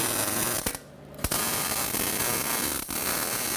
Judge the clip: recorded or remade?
recorded